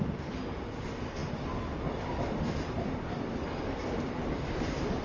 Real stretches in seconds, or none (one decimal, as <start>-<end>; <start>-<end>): 0.0-5.0